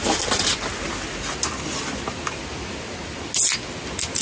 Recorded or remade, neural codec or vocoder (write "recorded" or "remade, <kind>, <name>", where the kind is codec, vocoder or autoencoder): recorded